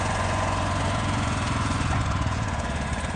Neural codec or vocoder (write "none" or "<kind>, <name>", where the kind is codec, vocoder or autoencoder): vocoder, Vocos